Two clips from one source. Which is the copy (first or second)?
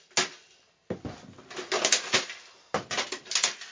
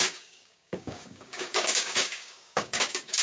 second